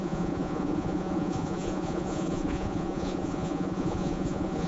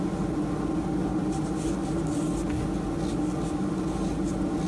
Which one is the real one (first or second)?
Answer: second